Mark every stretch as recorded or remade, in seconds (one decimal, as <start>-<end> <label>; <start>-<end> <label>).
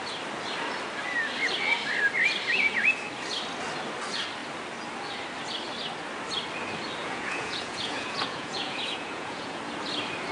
0.0-7.0 recorded; 7.0-9.6 remade; 9.6-10.3 recorded